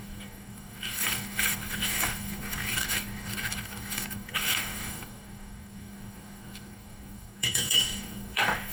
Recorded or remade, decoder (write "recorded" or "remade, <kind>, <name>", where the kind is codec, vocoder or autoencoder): remade, codec, DAC